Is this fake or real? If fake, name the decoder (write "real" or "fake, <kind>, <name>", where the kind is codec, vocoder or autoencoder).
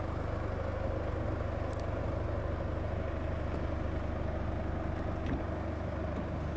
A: real